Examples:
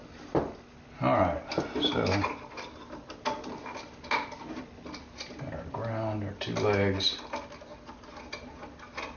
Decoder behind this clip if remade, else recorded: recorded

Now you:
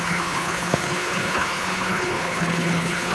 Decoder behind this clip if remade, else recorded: remade, codec, HILCodec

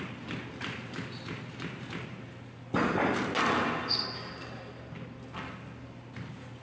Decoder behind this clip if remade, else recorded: recorded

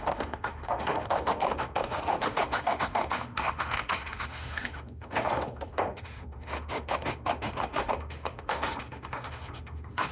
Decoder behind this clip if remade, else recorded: remade, autoencoder, DAC-VAE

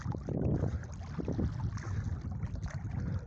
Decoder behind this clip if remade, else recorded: recorded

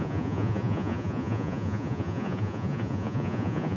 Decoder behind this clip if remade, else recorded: remade, vocoder, Vocos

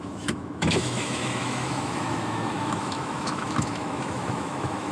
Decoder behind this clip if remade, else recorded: remade, autoencoder, DAC-VAE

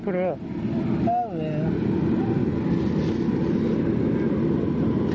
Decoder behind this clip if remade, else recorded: recorded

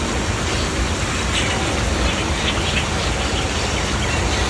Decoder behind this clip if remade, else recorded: recorded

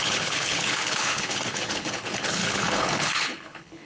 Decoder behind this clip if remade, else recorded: remade, codec, HILCodec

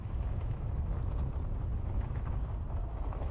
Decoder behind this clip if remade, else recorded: recorded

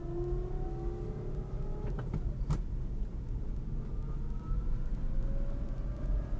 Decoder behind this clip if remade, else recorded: recorded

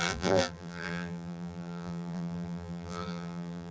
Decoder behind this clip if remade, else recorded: remade, vocoder, BigVGAN v2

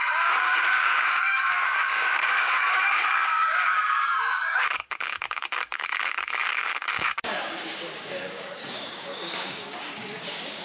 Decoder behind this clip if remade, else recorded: remade, codec, DAC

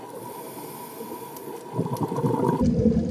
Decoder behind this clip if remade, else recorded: recorded